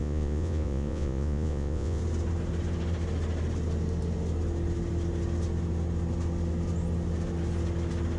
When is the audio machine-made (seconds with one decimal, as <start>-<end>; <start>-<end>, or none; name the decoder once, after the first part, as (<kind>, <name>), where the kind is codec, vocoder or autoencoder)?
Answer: 0.0-2.0 (vocoder, Vocos)